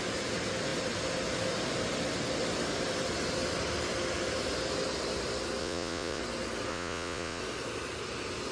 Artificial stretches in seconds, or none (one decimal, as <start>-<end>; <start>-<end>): 5.6-6.2; 6.7-7.4